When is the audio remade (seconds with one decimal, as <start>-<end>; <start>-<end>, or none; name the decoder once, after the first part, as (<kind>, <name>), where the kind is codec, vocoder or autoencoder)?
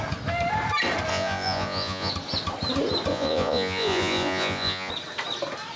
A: 1.1-2.1 (vocoder, Vocos); 3.1-4.9